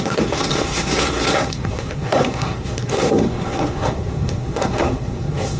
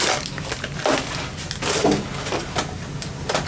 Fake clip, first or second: first